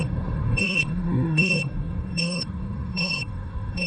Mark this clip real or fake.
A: fake